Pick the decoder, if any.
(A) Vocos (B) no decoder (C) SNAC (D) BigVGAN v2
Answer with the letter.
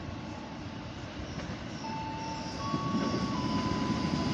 B